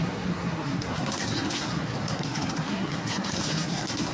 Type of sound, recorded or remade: remade